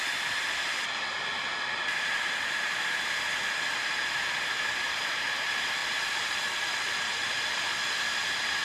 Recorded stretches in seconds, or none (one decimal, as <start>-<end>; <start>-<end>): 0.0-8.6